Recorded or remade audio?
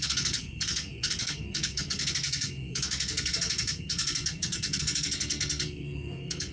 remade